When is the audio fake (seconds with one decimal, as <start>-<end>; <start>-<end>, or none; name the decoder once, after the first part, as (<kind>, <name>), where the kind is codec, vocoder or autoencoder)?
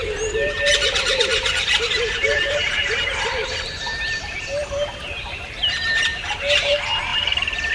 0.0-7.7 (vocoder, BigVGAN v2)